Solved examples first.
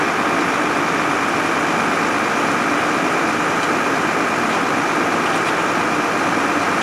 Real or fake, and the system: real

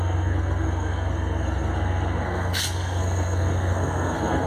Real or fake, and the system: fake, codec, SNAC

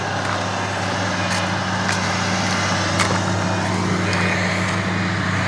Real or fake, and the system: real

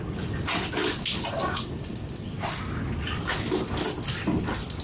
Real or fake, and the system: real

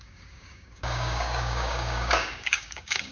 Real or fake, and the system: fake, codec, DAC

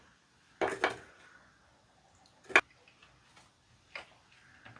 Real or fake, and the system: real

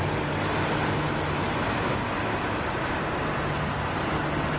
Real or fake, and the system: real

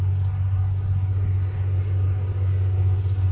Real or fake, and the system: real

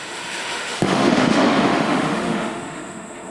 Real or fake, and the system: fake, autoencoder, DAC-VAE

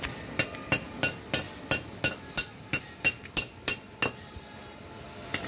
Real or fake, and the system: real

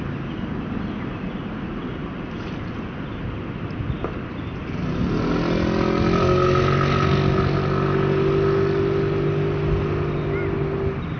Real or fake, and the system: real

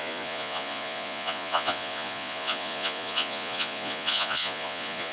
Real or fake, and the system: fake, vocoder, Vocos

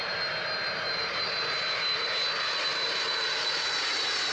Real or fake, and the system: real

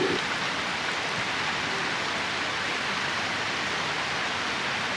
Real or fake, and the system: real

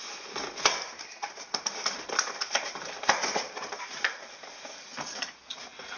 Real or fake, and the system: real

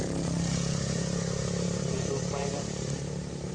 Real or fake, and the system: fake, vocoder, BigVGAN v2